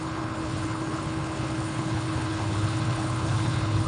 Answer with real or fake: fake